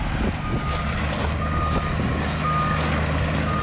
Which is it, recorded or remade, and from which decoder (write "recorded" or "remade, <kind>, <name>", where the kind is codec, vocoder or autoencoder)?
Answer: recorded